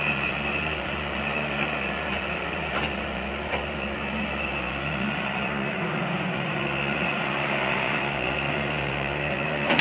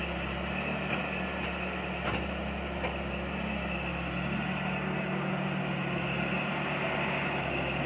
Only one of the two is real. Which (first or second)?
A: second